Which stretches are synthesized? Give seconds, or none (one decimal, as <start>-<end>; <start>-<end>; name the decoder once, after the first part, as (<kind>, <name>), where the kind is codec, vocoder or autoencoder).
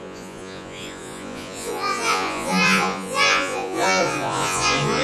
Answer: 0.0-5.0 (vocoder, Vocos)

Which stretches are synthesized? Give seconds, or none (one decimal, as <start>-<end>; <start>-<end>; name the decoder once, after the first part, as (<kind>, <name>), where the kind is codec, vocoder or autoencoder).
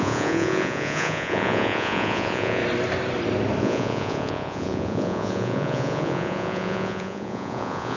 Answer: 0.0-2.6 (vocoder, Vocos); 3.6-8.0